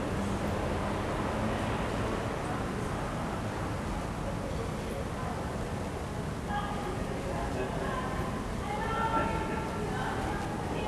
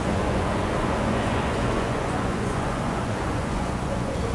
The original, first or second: first